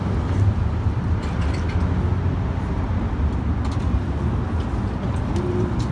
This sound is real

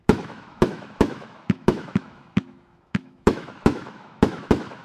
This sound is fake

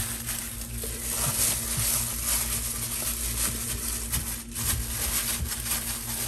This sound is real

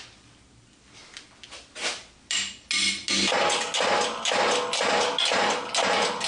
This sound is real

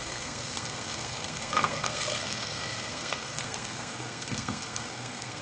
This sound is fake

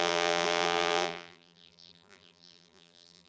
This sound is fake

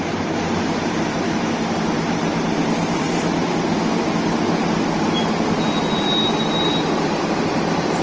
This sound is fake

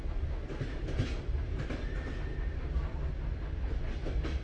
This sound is real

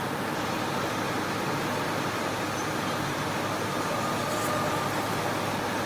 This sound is real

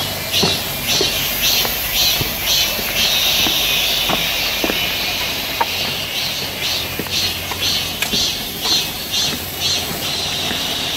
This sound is real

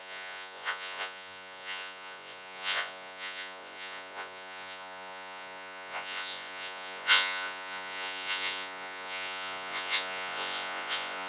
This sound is fake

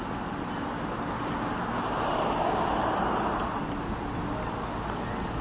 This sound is real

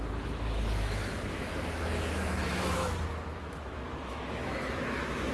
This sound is fake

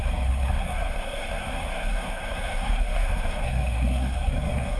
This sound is fake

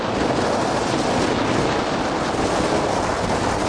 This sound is real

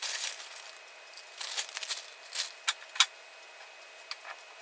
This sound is real